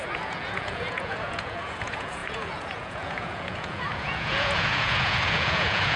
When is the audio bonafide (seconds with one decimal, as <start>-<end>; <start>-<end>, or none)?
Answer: none